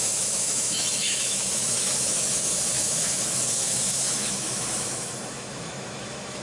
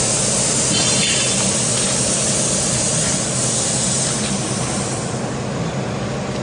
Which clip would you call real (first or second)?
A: second